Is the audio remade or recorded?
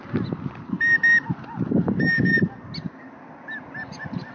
recorded